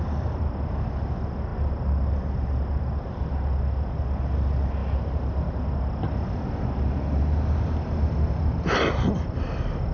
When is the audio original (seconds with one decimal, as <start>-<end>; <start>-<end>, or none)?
0.0-9.9